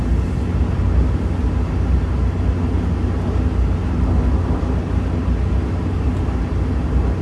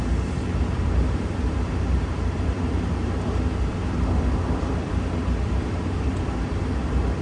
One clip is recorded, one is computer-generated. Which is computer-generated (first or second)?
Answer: second